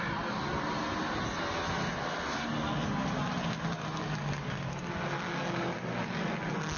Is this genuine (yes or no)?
yes